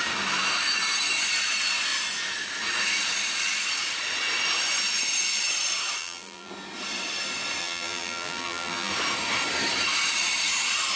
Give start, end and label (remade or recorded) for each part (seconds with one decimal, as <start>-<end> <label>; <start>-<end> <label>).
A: 0.0-6.0 recorded; 6.0-6.5 remade; 6.5-7.6 recorded; 7.6-8.9 remade; 8.9-11.0 recorded